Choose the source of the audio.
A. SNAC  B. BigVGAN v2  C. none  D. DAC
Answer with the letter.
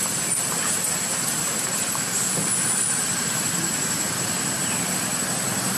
C